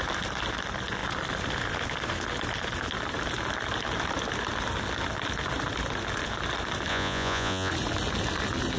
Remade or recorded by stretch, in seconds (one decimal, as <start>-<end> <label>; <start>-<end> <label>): 0.0-6.9 recorded; 6.9-7.7 remade; 7.7-8.8 recorded

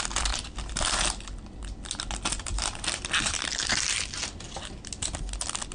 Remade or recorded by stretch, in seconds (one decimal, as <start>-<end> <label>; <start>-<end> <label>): 0.0-2.5 recorded; 2.5-3.6 remade; 3.6-5.7 recorded

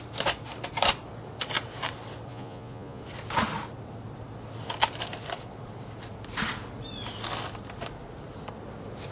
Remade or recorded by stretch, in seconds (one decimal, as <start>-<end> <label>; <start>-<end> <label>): 0.0-2.3 recorded; 2.3-3.0 remade; 3.0-9.1 recorded

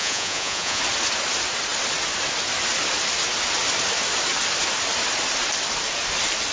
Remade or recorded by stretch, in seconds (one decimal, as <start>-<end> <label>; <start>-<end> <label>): 0.0-0.8 remade; 0.8-6.5 recorded

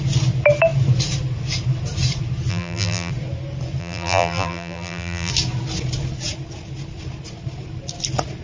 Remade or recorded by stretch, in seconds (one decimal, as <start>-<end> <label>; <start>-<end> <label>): 0.0-2.5 recorded; 2.5-3.1 remade; 3.1-3.8 recorded; 3.8-5.3 remade; 5.3-8.4 recorded

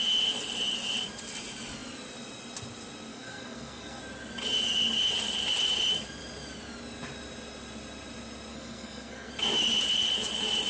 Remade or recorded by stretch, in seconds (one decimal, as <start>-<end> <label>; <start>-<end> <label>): 0.0-3.1 recorded; 3.1-4.0 remade; 4.0-8.5 recorded; 8.5-9.3 remade; 9.3-10.7 recorded

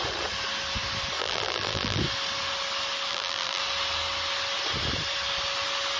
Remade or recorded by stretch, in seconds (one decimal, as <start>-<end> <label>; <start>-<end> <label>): 0.0-1.2 recorded; 1.2-2.0 remade; 2.0-3.1 recorded; 3.1-3.6 remade; 3.6-6.0 recorded